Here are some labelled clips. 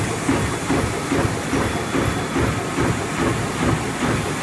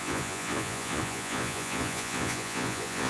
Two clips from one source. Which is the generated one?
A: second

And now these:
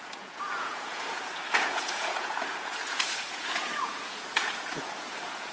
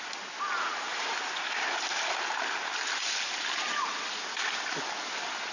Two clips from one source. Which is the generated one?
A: first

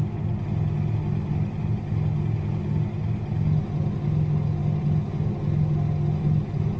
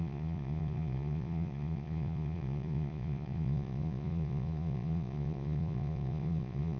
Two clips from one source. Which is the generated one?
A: second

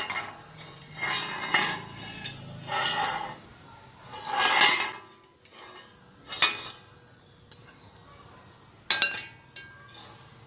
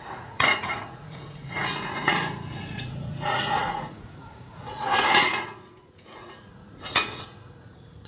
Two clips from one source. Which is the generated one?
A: second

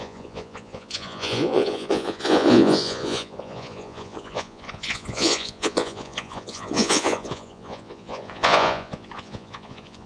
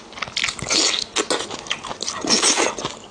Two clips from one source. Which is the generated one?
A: first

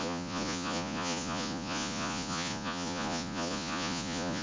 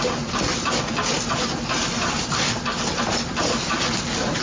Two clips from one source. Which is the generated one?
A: first